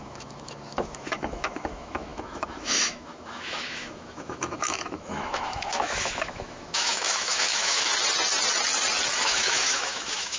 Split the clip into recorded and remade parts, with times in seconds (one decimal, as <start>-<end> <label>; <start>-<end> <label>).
0.0-7.9 remade; 7.9-9.2 recorded; 9.2-10.4 remade